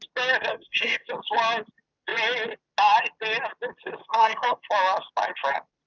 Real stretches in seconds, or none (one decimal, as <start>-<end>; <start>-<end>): 0.0-0.5; 1.1-4.0; 4.7-5.9